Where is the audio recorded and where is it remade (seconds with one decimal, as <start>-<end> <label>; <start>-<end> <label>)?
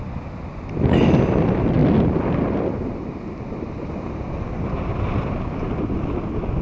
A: 0.0-6.6 recorded